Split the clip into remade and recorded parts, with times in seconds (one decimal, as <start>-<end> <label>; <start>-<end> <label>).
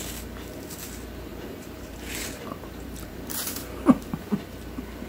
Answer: 0.0-1.3 recorded; 1.3-4.4 remade; 4.4-5.1 recorded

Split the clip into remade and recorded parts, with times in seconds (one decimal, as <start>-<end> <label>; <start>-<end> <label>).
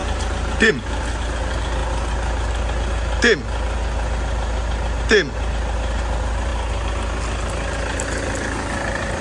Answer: 0.0-9.2 recorded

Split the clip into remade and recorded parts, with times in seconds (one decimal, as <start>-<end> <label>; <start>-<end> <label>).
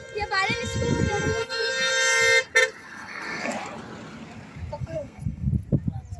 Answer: 0.0-1.4 recorded; 1.4-1.9 remade; 1.9-2.8 recorded; 2.8-3.5 remade; 3.5-4.8 recorded; 4.8-5.5 remade; 5.5-6.2 recorded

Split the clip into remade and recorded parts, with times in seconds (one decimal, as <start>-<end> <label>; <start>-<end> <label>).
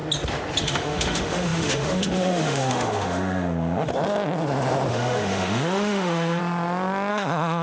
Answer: 0.0-0.6 recorded; 0.6-3.9 remade; 3.9-4.9 recorded; 4.9-6.4 remade; 6.4-7.1 recorded; 7.1-7.6 remade